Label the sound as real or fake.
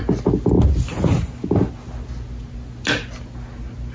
real